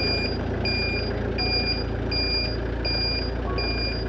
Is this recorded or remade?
recorded